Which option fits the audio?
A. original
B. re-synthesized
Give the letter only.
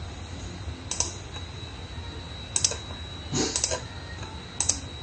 A